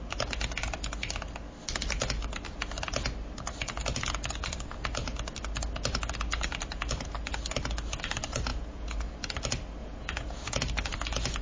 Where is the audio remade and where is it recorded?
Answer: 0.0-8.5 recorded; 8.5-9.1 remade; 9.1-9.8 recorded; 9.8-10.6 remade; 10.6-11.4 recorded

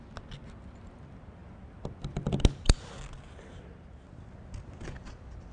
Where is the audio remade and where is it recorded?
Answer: 0.0-5.5 recorded

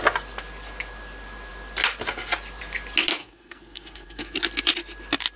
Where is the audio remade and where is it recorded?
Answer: 0.0-3.2 recorded; 3.2-4.4 remade; 4.4-5.4 recorded

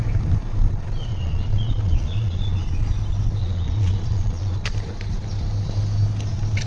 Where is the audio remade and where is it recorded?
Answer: 0.0-1.1 recorded; 1.1-2.8 remade; 2.8-3.4 recorded; 3.4-4.6 remade; 4.6-6.7 recorded

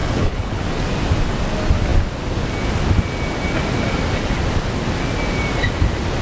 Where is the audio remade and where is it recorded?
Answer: 0.0-0.6 remade; 0.6-6.2 recorded

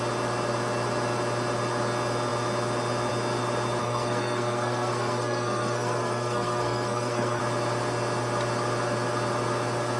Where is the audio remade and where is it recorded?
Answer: 0.0-3.8 recorded; 3.8-7.4 remade; 7.4-10.0 recorded

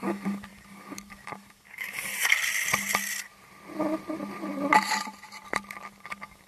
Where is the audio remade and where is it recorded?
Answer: 0.0-2.1 remade; 2.1-6.0 recorded; 6.0-6.5 remade